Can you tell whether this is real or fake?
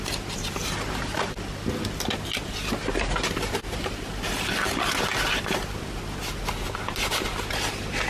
real